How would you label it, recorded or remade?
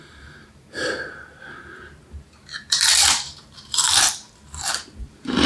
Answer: remade